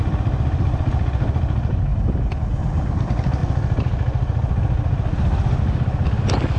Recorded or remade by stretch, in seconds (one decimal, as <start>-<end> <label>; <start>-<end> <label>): 0.0-6.6 recorded